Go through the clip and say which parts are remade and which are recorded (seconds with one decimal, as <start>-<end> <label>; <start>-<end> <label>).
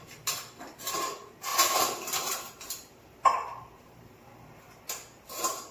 0.0-1.5 recorded; 1.5-4.8 remade; 4.8-5.7 recorded